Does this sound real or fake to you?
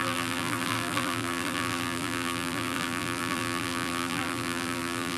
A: fake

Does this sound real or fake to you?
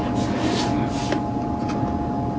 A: real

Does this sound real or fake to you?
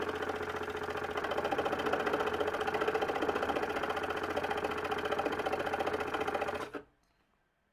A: real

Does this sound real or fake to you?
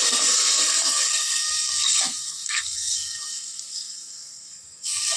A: fake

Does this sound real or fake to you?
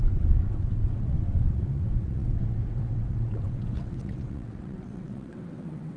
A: fake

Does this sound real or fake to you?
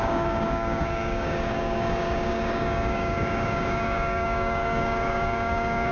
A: fake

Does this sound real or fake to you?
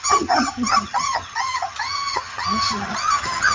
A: fake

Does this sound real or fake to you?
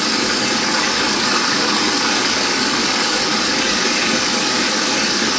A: fake